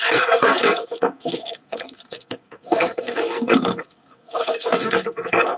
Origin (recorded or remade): remade